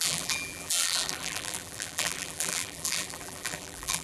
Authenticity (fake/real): fake